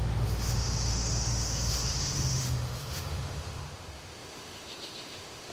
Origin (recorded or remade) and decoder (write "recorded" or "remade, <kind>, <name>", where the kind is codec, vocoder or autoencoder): remade, autoencoder, DAC-VAE